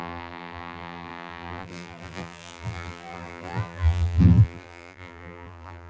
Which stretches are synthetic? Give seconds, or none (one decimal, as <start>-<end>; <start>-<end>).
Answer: 0.0-5.9